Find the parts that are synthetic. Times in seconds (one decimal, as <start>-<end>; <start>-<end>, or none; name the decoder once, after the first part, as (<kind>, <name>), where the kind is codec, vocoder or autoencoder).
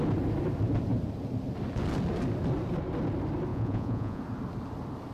3.5-4.2 (vocoder, Vocos)